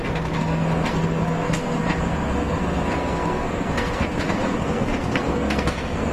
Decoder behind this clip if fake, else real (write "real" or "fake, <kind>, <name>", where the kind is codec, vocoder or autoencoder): fake, codec, SNAC